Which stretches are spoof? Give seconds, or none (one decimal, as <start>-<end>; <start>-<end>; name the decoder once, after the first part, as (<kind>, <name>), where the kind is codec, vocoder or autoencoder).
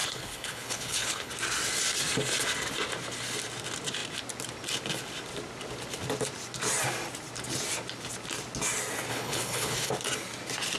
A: 0.0-1.3 (codec, HILCodec); 9.1-9.9